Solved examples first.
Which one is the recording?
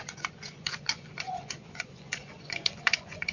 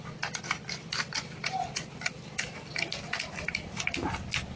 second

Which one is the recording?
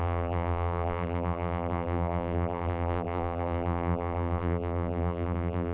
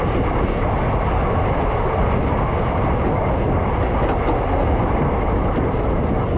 second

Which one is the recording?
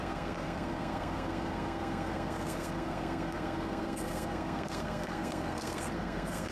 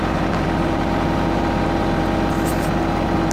second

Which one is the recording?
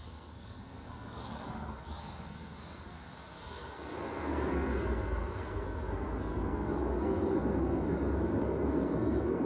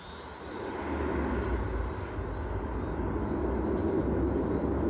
second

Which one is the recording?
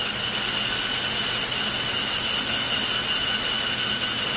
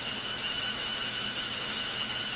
first